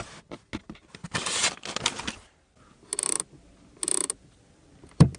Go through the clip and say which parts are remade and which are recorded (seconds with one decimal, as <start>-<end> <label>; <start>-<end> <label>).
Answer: 0.0-5.2 recorded